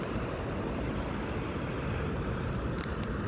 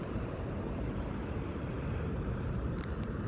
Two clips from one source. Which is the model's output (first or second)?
second